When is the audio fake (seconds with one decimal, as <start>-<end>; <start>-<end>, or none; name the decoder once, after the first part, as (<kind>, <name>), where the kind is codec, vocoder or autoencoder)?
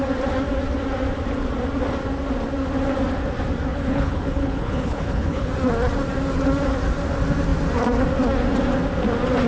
3.7-5.5 (codec, HILCodec)